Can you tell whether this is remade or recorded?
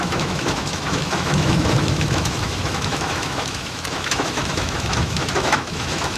remade